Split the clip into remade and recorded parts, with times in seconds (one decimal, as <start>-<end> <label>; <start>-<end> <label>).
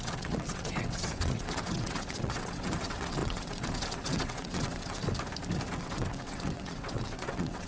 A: 0.0-5.0 remade; 5.0-5.7 recorded; 5.7-7.7 remade